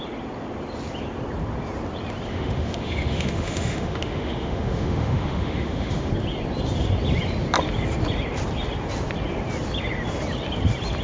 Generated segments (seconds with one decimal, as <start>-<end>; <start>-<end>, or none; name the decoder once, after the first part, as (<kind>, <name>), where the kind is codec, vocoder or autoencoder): 2.3-6.1 (autoencoder, DAC-VAE)